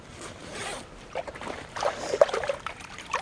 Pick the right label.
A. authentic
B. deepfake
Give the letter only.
B